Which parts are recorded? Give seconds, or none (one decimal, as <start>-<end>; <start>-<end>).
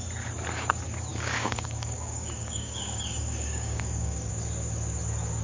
0.0-1.1; 4.3-5.4